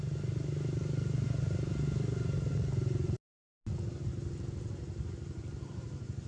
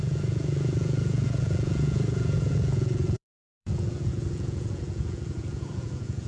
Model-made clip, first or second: second